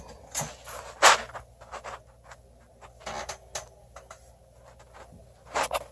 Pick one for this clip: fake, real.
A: real